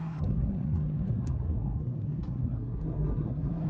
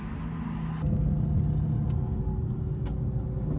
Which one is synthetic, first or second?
first